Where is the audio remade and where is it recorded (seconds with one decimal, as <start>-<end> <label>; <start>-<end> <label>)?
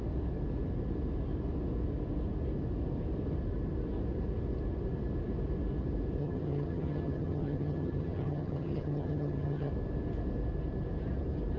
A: 0.0-6.2 recorded; 6.2-9.7 remade; 9.7-11.6 recorded